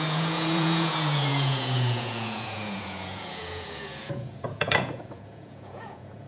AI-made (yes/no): yes